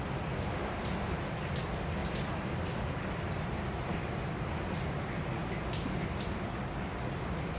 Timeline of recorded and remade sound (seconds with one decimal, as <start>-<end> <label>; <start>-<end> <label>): 0.0-2.0 recorded; 2.0-3.6 remade; 3.6-5.4 recorded; 5.4-6.6 remade; 6.6-7.6 recorded